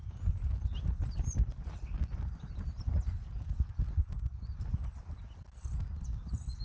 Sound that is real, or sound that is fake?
real